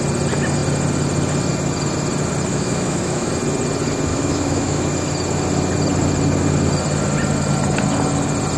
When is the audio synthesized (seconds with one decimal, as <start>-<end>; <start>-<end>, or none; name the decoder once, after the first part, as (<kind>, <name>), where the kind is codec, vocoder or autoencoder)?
2.5-3.3 (autoencoder, DAC-VAE); 4.1-4.8